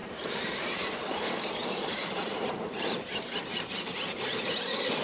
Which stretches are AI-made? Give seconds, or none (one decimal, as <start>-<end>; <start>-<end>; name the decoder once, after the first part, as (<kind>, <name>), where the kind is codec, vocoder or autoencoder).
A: 0.0-5.0 (vocoder, BigVGAN v2)